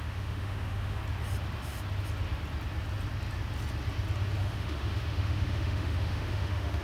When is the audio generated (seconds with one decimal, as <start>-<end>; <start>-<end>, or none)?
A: 0.0-1.0; 4.4-6.8